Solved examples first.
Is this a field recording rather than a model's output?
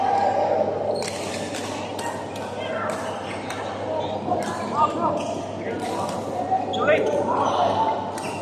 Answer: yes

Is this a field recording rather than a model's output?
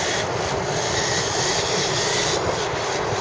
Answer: yes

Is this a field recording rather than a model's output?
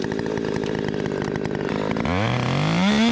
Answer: yes